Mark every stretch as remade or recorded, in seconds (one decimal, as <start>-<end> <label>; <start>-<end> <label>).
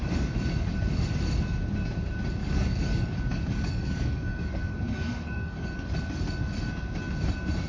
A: 0.0-2.4 recorded; 2.4-5.9 remade; 5.9-7.7 recorded